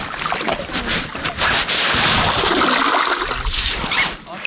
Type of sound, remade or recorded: recorded